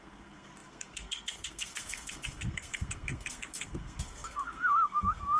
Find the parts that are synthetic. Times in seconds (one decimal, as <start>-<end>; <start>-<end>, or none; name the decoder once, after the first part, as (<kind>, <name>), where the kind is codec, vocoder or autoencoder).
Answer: 0.0-5.4 (codec, SNAC)